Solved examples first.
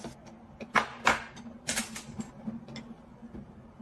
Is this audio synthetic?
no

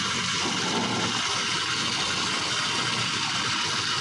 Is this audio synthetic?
no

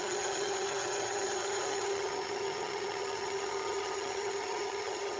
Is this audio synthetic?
yes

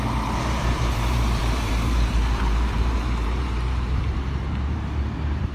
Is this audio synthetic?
yes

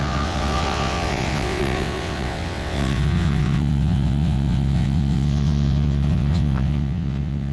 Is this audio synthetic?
yes